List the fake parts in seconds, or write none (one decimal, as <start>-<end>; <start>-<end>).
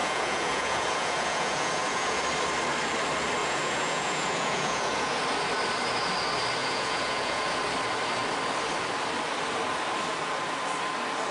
0.0-2.2; 3.4-5.1; 6.6-7.6